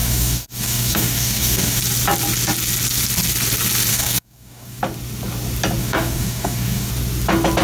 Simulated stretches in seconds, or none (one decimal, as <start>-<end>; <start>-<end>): 0.0-1.8; 3.9-4.8; 5.8-6.9